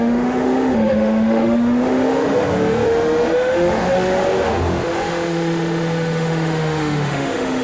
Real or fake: fake